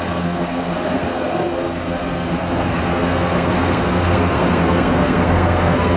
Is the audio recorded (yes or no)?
no